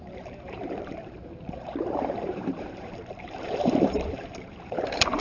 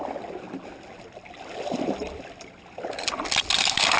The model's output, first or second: first